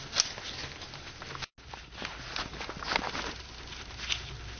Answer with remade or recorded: recorded